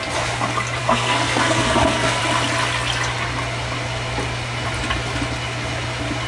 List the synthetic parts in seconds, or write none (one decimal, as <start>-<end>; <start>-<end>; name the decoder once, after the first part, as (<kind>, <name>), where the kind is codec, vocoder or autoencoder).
0.8-2.2 (codec, SNAC)